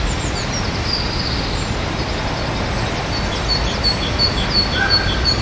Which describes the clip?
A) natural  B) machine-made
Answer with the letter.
A